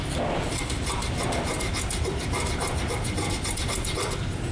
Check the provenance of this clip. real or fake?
real